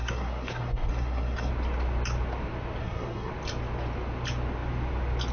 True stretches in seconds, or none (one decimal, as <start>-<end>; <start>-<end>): 1.5-2.8; 3.3-5.3